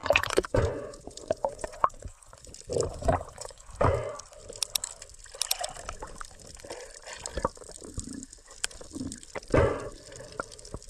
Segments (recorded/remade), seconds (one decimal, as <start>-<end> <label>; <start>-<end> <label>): 0.0-2.5 remade; 2.5-2.9 recorded; 2.9-3.7 remade; 3.7-10.9 recorded